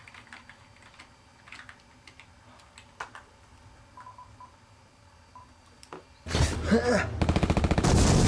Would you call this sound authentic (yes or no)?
yes